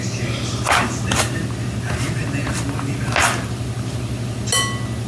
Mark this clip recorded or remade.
recorded